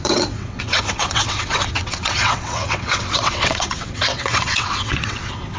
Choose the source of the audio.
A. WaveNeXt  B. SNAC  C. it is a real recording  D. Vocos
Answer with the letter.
A